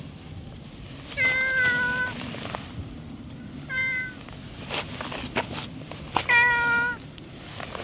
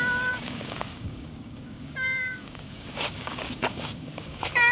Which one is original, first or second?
first